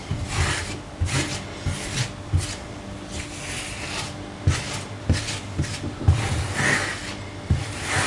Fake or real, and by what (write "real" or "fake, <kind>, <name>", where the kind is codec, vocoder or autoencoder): real